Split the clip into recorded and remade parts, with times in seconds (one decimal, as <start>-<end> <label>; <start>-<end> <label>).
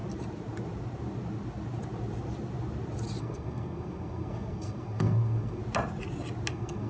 0.0-3.2 recorded; 3.2-5.6 remade; 5.6-6.5 recorded; 6.5-6.9 remade